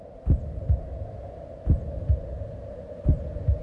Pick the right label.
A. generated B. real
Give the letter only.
B